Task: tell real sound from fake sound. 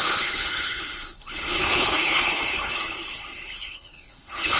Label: fake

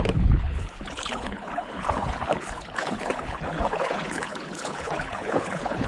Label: fake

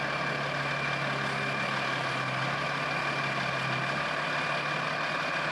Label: real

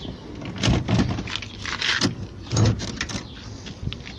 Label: real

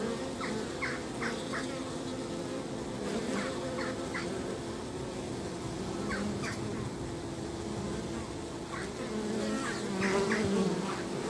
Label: real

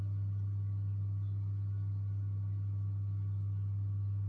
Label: real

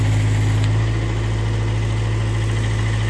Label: real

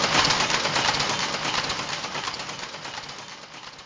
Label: real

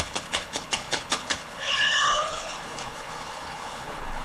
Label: fake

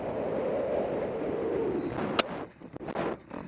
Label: real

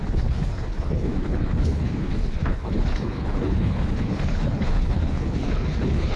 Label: fake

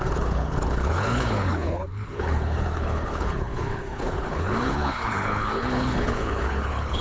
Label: fake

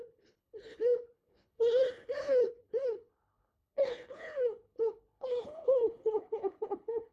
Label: fake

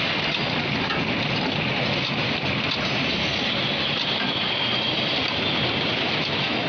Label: real